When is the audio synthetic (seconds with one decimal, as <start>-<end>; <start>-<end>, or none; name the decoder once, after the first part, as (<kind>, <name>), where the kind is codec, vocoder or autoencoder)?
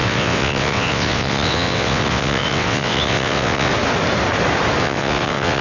0.0-3.7 (vocoder, WaveNeXt); 4.8-5.6